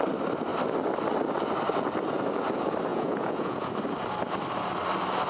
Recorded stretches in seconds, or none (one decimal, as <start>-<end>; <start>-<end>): 0.0-2.9; 3.7-5.3